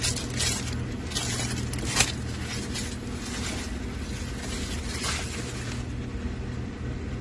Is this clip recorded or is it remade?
recorded